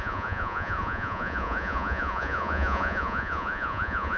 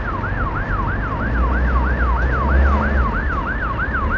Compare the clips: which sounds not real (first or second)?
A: first